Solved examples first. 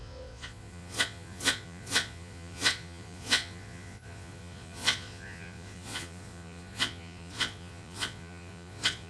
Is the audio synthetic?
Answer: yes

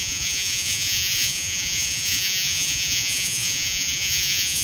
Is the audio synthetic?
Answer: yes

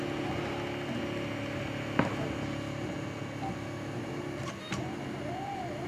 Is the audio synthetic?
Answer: no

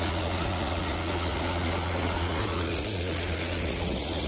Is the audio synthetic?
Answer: yes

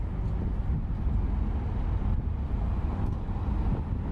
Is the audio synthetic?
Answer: no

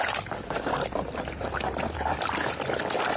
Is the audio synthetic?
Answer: no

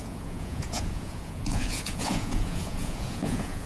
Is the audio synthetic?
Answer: yes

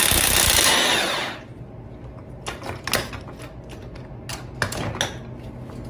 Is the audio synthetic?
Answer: no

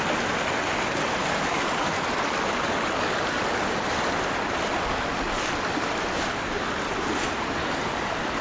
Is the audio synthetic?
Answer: no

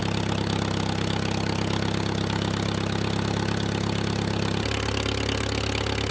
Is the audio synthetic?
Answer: no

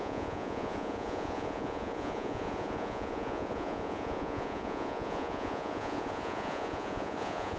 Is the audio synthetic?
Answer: yes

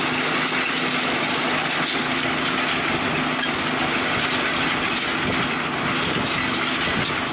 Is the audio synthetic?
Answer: no